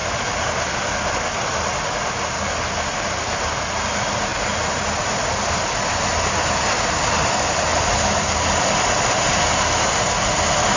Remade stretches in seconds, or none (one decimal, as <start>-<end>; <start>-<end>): none